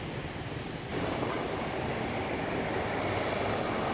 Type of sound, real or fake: real